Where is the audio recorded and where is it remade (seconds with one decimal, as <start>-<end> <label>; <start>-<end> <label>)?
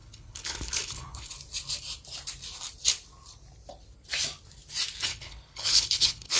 0.0-1.3 remade; 1.3-5.1 recorded; 5.1-6.4 remade